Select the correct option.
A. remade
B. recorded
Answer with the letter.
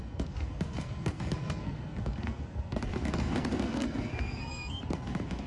A